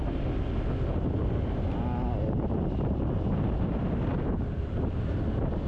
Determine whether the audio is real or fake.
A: real